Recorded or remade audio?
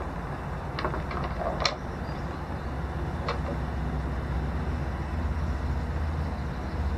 recorded